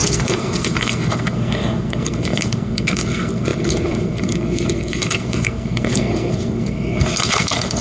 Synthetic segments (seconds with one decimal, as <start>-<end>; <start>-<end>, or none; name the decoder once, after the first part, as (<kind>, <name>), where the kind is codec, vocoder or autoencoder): 0.0-7.8 (codec, SNAC)